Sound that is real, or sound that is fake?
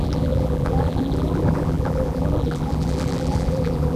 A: fake